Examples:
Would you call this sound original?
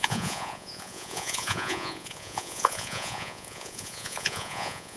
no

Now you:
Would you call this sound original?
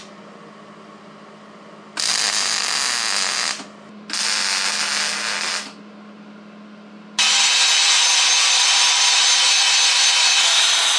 yes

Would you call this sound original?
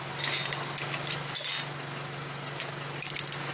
yes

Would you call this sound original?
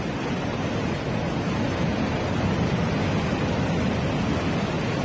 yes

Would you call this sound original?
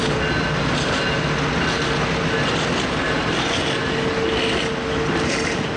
yes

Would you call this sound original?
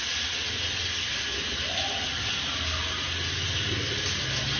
yes